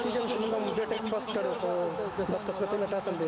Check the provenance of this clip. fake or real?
fake